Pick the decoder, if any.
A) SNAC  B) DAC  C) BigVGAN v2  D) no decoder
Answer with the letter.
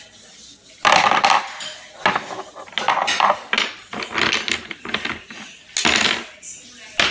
D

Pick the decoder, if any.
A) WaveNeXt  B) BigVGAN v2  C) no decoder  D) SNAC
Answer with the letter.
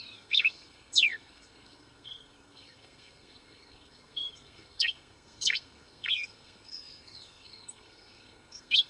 D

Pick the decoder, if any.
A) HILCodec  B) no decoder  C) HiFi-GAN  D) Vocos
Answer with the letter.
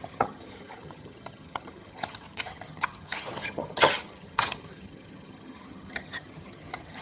C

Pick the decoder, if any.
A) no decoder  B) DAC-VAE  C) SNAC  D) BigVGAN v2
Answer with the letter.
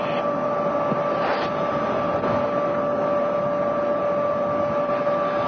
A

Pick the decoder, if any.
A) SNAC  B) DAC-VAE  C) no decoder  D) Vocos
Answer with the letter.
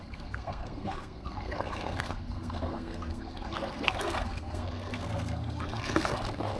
A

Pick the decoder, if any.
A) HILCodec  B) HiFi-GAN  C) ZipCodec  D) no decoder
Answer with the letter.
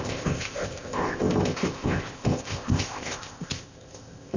C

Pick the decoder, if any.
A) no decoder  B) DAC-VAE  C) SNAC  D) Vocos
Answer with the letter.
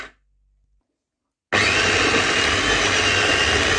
A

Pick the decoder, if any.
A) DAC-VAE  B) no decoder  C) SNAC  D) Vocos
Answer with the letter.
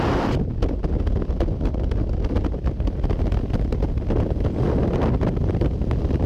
B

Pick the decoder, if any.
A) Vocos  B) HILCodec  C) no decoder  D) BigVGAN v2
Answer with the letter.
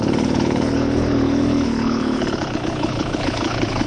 B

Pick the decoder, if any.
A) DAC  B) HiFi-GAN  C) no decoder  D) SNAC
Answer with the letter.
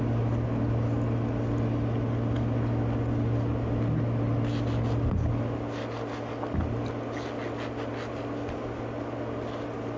C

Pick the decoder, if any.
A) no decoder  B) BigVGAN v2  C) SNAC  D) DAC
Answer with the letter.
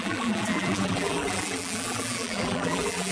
B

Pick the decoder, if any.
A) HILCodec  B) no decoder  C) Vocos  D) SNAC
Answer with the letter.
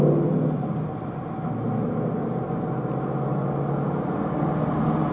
B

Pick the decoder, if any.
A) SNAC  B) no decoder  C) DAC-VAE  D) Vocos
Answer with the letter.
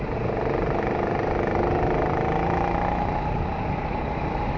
B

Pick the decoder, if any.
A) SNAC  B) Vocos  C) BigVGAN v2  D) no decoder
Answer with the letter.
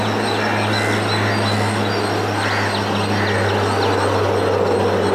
D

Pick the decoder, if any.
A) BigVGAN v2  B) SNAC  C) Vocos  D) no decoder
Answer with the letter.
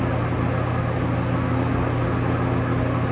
D